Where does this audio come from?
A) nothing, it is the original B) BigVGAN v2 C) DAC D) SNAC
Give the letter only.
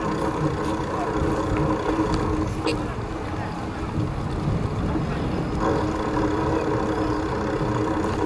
A